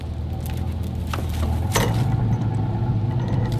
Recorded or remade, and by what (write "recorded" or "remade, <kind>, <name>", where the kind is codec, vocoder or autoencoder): recorded